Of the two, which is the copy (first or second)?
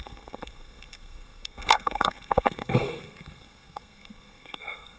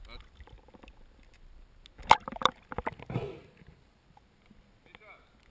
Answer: first